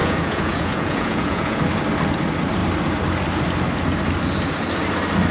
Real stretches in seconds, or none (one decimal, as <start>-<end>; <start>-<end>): 1.6-5.3